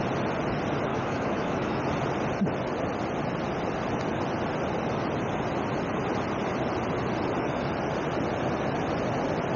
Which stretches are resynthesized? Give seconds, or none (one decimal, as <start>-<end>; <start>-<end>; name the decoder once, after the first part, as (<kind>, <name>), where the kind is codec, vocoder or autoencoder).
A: 0.9-1.8 (autoencoder, DAC-VAE)